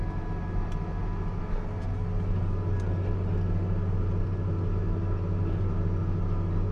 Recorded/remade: recorded